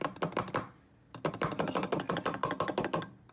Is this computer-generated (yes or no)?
no